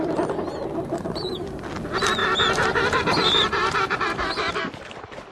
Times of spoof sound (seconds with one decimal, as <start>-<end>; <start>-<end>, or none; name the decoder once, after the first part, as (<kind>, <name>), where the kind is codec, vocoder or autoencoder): 2.2-4.6 (vocoder, BigVGAN v2)